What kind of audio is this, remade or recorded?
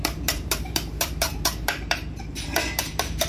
remade